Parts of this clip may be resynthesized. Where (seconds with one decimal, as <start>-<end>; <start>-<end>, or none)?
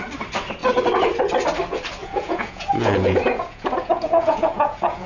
2.0-5.1